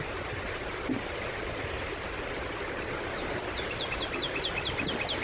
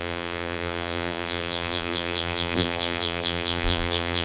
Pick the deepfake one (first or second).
second